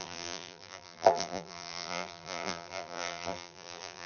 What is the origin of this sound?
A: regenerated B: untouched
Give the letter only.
A